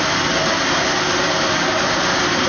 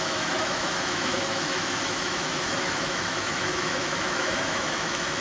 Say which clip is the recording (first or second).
first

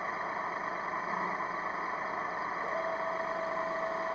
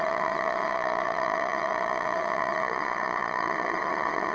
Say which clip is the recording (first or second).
first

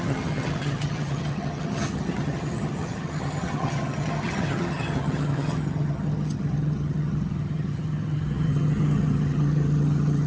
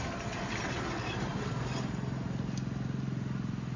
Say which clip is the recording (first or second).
second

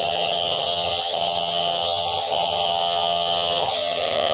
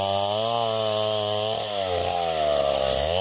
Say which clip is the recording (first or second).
second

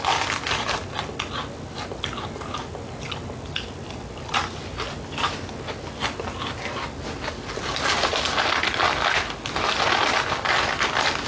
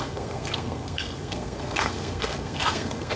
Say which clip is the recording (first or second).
first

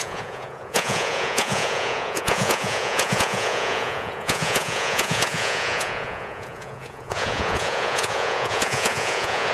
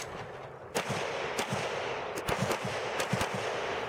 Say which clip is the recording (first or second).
second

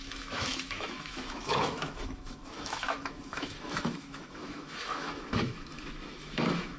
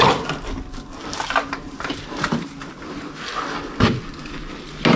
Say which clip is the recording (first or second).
second